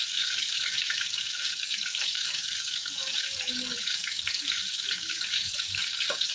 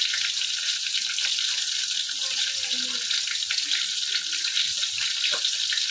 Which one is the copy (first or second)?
first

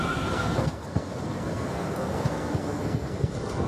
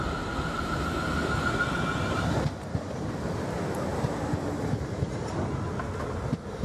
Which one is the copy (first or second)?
first